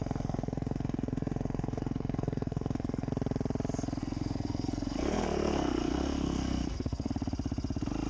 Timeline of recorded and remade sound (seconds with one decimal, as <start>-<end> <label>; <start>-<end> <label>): 0.0-3.1 remade; 3.1-4.0 recorded; 4.0-7.1 remade; 7.1-8.1 recorded

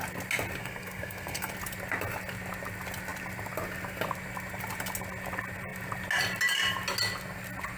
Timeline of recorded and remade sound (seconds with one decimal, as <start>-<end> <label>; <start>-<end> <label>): 0.0-0.6 recorded; 0.6-1.5 remade; 1.5-7.8 recorded

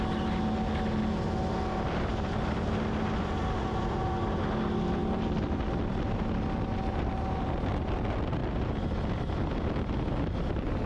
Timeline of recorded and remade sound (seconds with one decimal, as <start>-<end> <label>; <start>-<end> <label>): 0.0-10.9 recorded

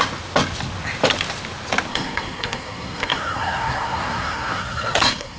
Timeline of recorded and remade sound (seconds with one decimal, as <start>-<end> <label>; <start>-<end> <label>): 0.0-1.9 recorded; 1.9-5.4 remade

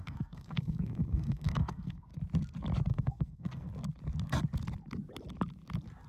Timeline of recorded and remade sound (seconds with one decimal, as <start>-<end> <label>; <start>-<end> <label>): 0.0-2.1 remade; 2.1-2.9 recorded; 2.9-3.7 remade; 3.7-6.1 recorded

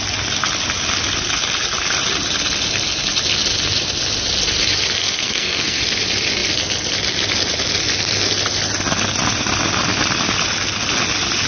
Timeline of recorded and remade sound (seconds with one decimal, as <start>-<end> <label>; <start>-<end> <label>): 0.0-5.0 recorded; 5.0-5.8 remade; 5.8-11.5 recorded

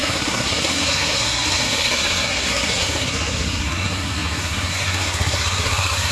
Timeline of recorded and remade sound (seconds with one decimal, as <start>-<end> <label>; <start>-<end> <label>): 0.0-6.1 remade